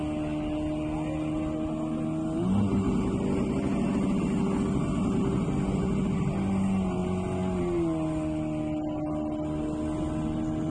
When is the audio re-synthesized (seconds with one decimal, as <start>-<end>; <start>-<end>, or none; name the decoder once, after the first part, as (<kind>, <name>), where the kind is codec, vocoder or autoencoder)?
none